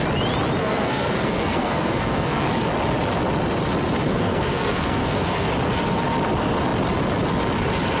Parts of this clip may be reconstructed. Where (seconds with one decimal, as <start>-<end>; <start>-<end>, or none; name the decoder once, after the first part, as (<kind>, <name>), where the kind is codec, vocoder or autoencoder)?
0.6-2.5 (codec, SNAC); 4.1-5.5